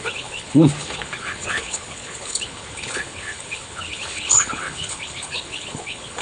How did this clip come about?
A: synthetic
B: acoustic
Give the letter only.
A